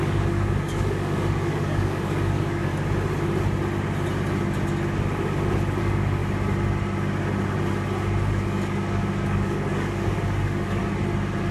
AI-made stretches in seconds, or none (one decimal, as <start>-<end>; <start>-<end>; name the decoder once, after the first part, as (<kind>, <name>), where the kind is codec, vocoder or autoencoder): 0.0-2.7 (codec, DAC); 5.8-6.2; 8.3-10.8